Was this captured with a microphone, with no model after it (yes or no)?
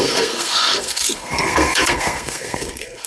no